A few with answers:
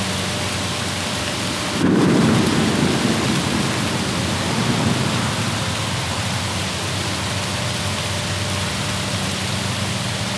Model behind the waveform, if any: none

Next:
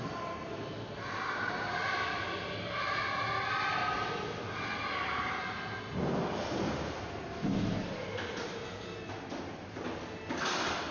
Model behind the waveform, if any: none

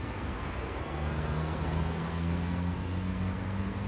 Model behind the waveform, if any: codec, SNAC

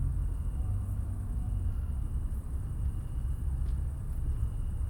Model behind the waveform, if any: none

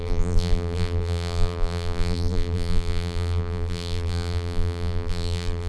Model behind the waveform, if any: vocoder, BigVGAN v2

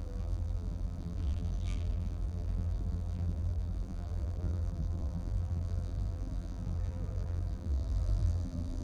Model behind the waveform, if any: vocoder, BigVGAN v2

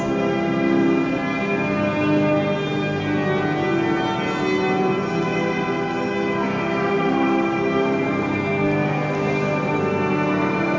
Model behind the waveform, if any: none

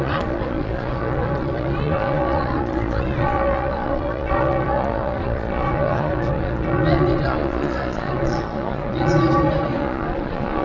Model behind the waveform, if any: vocoder, Vocos